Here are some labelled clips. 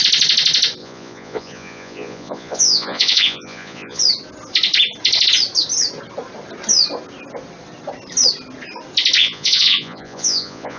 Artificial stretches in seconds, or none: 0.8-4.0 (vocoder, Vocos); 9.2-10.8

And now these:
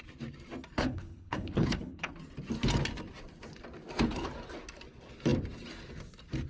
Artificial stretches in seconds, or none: 0.8-2.1 (codec, HILCodec)